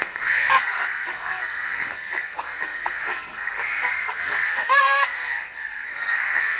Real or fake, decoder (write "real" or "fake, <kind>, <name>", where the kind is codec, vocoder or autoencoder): fake, codec, SNAC